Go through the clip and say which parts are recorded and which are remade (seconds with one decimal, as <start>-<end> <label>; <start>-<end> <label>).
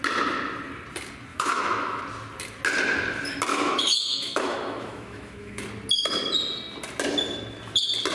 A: 0.0-1.3 recorded; 1.3-2.0 remade; 2.0-3.5 recorded; 3.5-5.6 remade; 5.6-8.1 recorded